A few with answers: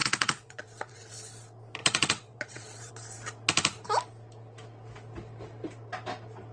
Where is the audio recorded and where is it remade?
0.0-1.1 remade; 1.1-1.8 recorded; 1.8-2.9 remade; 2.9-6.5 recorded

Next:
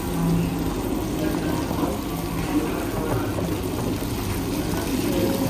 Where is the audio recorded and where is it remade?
0.0-5.5 recorded